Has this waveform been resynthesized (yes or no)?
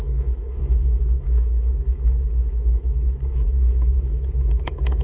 yes